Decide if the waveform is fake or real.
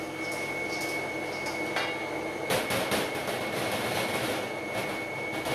real